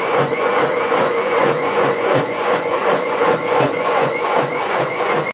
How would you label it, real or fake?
fake